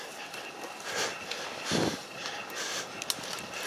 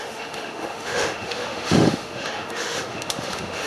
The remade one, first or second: second